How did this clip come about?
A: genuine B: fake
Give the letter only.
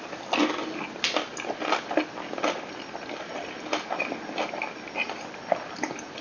A